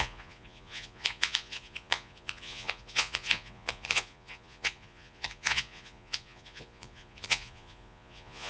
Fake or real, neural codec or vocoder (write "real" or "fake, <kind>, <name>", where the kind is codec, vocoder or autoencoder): fake, vocoder, Vocos